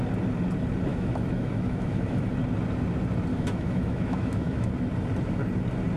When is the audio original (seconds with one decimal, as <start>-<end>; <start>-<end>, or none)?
0.0-0.9; 2.3-3.3; 4.7-6.0